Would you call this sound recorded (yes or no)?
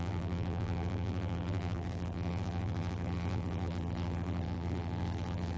no